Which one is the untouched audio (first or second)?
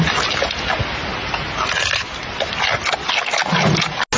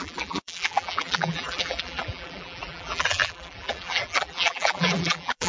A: first